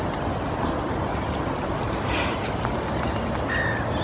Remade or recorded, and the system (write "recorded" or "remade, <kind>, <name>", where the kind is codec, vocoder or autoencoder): recorded